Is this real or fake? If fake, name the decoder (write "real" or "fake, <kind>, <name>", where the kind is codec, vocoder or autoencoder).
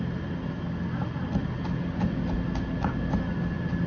real